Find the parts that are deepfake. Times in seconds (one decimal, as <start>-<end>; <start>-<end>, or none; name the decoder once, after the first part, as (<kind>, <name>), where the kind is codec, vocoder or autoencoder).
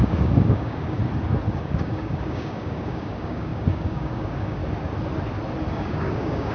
0.0-1.0 (codec, DAC); 1.5-4.6; 5.7-6.5